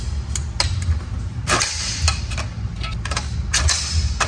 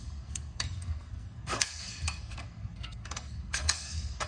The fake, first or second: second